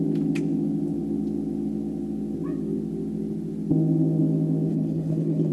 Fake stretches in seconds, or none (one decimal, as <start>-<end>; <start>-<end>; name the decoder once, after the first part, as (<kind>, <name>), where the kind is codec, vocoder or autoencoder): 4.7-5.5 (codec, HILCodec)